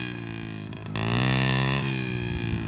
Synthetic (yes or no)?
no